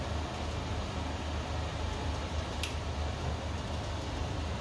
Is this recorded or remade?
recorded